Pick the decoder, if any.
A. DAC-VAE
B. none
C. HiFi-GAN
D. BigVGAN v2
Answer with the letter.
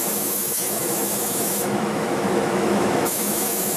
A